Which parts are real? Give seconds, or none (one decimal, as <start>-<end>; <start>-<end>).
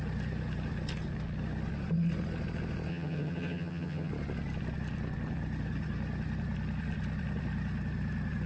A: 0.0-2.9; 4.1-8.5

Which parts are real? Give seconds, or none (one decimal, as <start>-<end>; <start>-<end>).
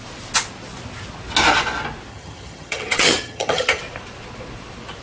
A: 0.0-2.1; 3.8-5.0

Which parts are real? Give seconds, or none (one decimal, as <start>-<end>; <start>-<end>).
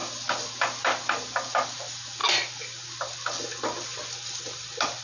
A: 0.0-5.0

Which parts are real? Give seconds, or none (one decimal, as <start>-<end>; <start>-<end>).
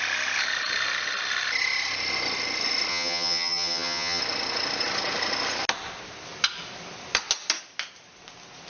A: 0.0-2.9; 4.2-8.7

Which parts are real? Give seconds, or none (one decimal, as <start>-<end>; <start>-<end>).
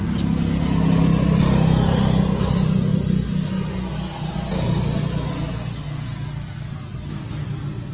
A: 0.0-7.9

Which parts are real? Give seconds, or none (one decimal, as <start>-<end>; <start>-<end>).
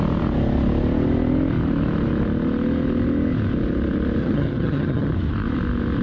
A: 0.0-4.2; 5.1-6.0